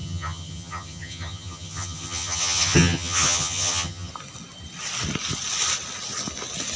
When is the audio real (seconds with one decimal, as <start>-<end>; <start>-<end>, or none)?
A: 4.1-6.8

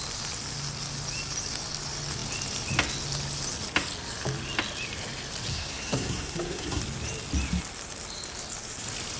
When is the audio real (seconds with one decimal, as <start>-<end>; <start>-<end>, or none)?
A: 0.0-5.5; 6.8-9.2